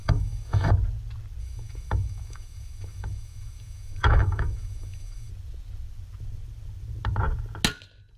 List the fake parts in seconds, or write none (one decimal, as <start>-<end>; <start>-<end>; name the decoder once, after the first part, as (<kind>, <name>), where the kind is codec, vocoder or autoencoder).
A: 0.0-0.7 (autoencoder, DAC-VAE); 1.4-5.3